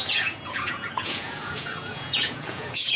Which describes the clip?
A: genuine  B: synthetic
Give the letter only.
B